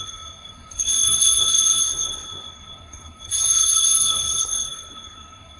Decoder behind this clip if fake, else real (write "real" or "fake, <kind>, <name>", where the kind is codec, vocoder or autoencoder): fake, codec, SNAC